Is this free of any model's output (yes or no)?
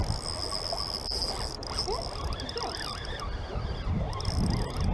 yes